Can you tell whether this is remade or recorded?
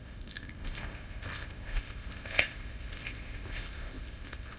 remade